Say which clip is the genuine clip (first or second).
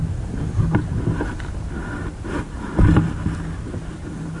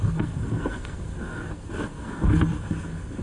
first